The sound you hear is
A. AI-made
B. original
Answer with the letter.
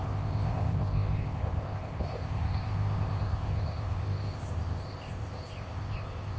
A